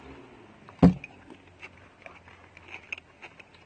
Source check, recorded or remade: recorded